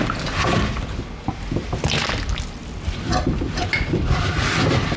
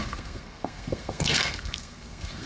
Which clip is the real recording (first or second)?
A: first